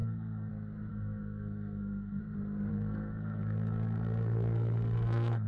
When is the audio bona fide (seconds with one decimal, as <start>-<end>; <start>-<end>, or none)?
0.5-0.9; 2.2-2.7